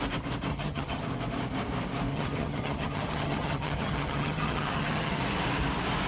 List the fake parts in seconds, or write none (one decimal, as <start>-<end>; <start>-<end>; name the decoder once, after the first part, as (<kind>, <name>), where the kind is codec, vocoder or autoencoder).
0.5-1.0 (vocoder, HiFi-GAN); 2.1-5.2